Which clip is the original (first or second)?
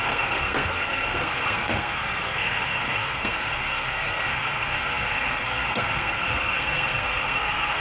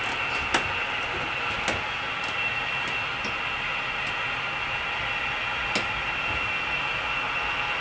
second